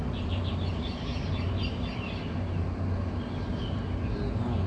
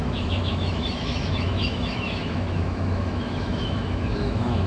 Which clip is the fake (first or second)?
second